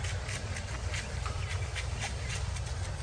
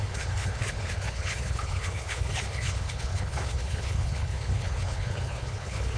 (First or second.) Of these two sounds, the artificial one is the second